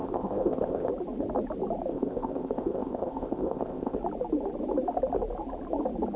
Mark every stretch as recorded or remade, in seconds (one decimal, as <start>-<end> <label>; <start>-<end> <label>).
0.0-0.9 remade; 0.9-1.9 recorded; 1.9-4.0 remade; 4.0-6.2 recorded